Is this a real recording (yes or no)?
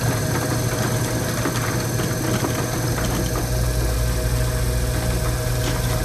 yes